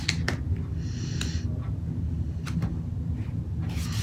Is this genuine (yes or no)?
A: yes